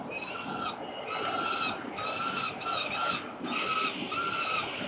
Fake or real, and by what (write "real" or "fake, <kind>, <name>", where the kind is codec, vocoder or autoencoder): real